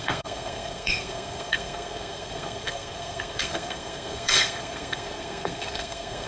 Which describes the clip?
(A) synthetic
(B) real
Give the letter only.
A